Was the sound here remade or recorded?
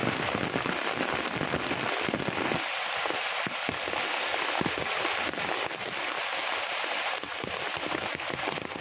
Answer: recorded